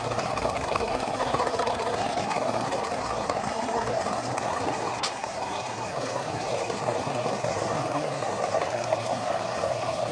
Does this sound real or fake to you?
fake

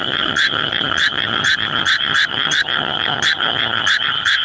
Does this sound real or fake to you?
fake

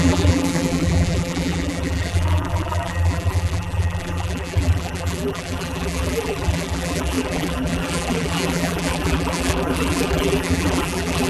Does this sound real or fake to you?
fake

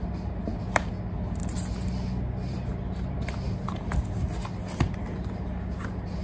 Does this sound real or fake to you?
real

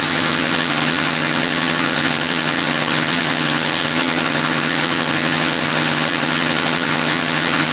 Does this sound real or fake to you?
fake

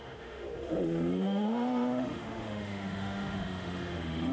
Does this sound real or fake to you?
fake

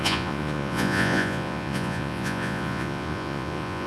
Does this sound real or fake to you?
fake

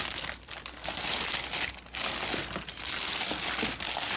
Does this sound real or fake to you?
real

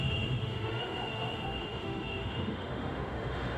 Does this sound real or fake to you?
fake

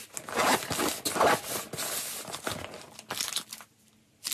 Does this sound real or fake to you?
real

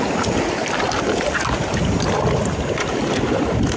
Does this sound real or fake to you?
real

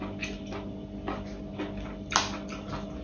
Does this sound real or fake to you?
real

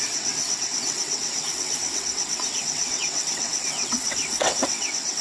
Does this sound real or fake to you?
fake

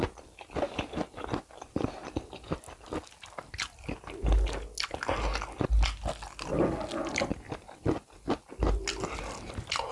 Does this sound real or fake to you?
real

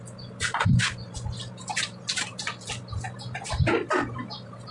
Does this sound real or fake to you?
real